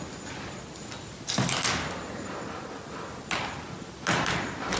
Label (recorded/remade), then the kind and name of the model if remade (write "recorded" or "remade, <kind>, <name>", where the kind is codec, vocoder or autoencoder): recorded